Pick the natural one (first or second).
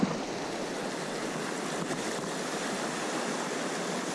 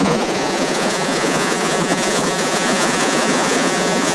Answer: first